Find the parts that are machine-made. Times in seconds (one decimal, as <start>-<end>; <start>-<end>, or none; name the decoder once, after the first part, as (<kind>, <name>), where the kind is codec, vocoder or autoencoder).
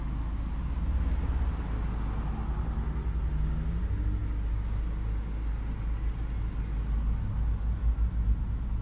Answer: none